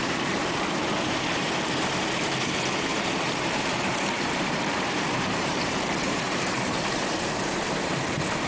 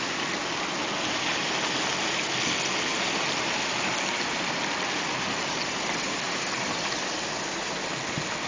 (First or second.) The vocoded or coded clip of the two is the first